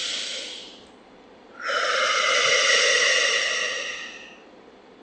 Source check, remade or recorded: recorded